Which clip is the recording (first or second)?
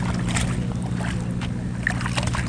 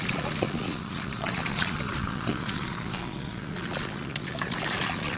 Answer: first